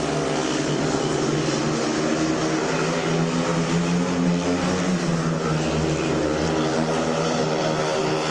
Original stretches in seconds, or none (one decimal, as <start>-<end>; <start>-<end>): 0.0-8.3